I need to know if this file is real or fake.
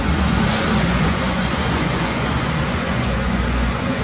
fake